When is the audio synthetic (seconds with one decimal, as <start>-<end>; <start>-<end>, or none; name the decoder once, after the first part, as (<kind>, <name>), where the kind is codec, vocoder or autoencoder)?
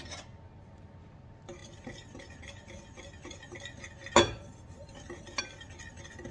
none